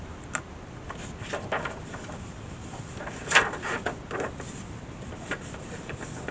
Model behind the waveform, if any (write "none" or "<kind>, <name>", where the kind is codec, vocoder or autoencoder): none